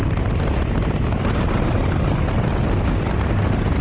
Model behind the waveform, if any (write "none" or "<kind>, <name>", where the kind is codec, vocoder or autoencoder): none